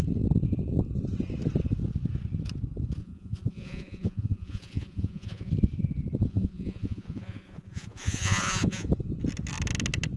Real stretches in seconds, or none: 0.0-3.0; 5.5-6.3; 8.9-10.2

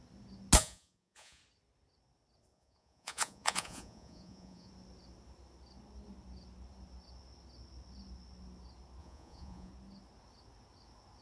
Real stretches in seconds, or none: 0.0-0.6; 1.4-2.5; 4.7-9.0; 9.7-11.2

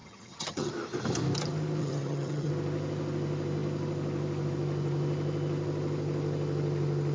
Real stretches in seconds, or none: 0.7-1.8; 2.5-7.1